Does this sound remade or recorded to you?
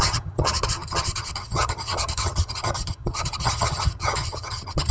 remade